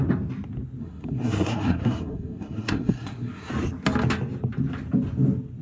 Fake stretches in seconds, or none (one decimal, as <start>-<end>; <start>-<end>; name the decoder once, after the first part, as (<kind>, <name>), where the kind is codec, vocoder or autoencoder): 0.8-3.5 (codec, SNAC)